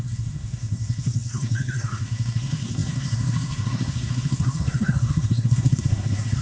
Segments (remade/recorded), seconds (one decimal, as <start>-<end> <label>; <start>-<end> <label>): 0.0-6.4 remade